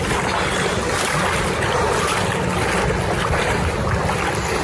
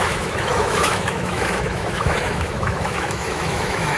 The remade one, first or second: second